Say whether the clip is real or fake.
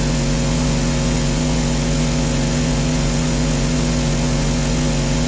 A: fake